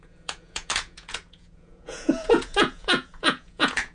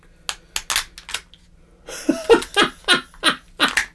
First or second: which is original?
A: second